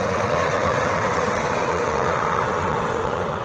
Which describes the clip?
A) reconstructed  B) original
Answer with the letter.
A